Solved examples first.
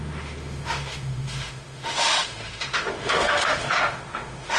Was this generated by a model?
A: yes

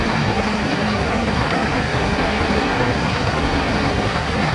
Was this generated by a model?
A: yes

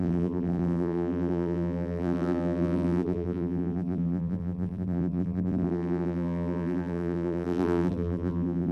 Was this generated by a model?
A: yes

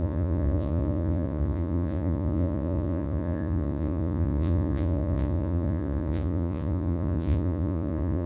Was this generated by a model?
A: yes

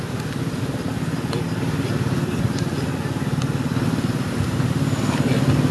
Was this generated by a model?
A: no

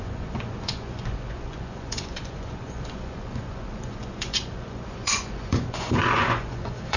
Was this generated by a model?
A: yes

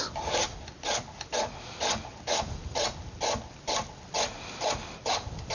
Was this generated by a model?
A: no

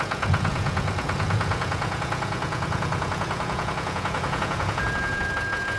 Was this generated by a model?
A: yes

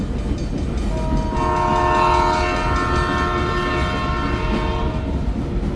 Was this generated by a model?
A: no